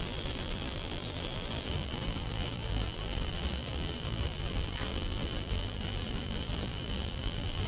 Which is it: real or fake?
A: fake